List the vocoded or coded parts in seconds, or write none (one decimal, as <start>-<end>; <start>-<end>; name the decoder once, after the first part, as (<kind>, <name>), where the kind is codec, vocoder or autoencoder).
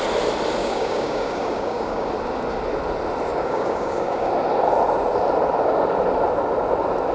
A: 0.6-2.1 (codec, DAC); 3.3-4.3